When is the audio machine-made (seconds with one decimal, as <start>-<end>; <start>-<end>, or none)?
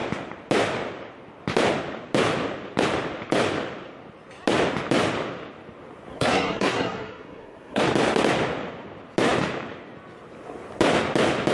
6.1-7.8